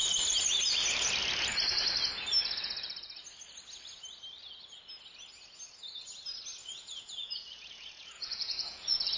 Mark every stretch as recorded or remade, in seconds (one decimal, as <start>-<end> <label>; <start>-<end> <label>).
0.0-6.6 recorded; 6.6-9.2 remade